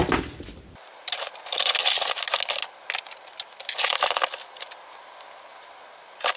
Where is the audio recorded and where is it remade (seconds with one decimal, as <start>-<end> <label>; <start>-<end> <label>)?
0.0-6.4 recorded